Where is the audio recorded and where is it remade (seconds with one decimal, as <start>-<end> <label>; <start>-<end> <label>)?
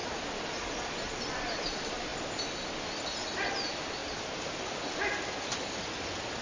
0.0-6.4 recorded